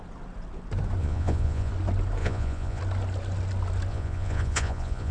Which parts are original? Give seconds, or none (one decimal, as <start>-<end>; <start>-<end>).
0.0-1.0; 1.7-2.2; 2.8-3.9